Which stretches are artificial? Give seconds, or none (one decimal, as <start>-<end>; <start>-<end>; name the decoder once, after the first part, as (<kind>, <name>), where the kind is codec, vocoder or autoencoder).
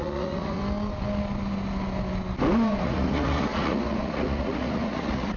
0.0-0.6 (vocoder, Vocos); 2.8-5.4